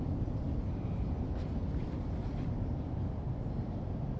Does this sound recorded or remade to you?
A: recorded